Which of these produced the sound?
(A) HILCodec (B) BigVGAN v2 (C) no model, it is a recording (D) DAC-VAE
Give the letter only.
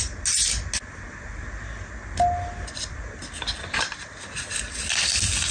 C